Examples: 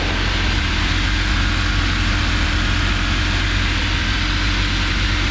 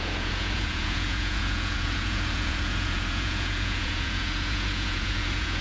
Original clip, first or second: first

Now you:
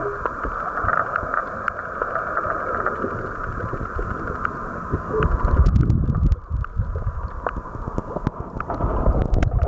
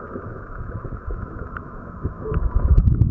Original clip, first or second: first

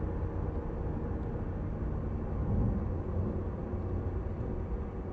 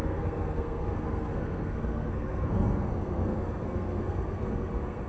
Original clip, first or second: first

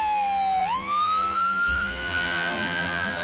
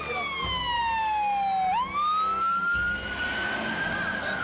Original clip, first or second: second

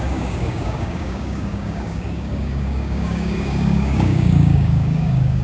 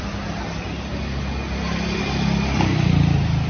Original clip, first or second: second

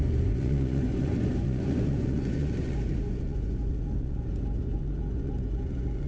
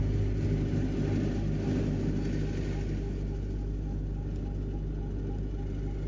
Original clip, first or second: second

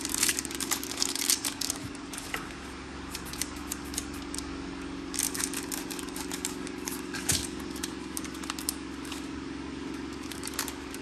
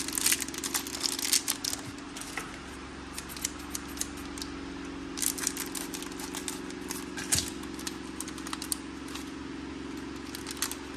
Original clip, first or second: second